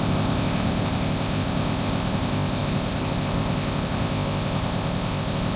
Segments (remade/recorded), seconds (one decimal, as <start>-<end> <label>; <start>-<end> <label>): 0.0-5.6 remade